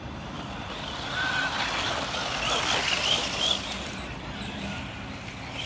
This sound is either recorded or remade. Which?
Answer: recorded